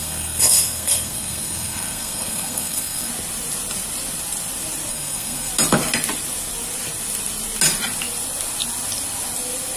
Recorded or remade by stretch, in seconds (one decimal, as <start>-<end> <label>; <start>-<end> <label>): 0.0-3.1 remade; 3.1-4.9 recorded; 4.9-5.5 remade; 5.5-9.8 recorded

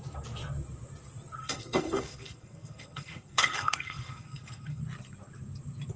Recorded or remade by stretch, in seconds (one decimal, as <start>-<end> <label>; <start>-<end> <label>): 0.0-1.4 recorded; 1.4-4.8 remade; 4.8-6.0 recorded

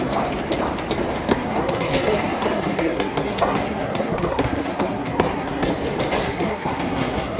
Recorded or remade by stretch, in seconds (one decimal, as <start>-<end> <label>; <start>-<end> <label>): 0.0-1.3 recorded; 1.3-5.7 remade; 5.7-6.2 recorded; 6.2-7.4 remade

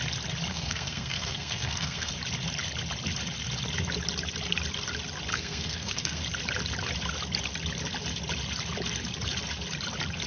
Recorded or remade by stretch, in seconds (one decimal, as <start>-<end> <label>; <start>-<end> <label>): 0.0-0.5 recorded; 0.5-2.1 remade; 2.1-5.3 recorded; 5.3-6.2 remade; 6.2-10.3 recorded